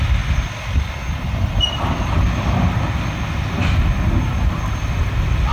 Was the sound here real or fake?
real